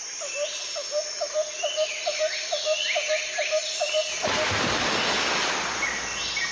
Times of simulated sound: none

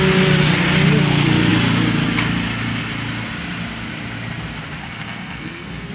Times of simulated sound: 4.8-5.9 (codec, SNAC)